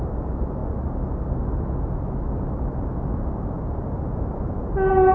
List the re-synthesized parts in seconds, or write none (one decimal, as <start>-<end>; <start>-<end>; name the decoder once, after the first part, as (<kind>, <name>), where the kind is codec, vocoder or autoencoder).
none